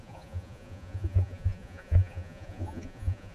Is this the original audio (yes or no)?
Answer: no